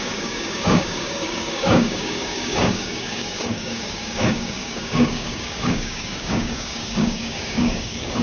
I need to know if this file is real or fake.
fake